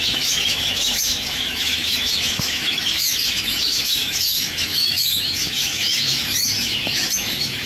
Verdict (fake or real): fake